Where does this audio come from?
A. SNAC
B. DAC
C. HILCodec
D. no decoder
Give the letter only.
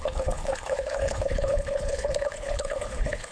C